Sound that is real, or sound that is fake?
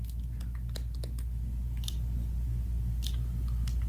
real